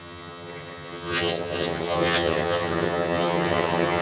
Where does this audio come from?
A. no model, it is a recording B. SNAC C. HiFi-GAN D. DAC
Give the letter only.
C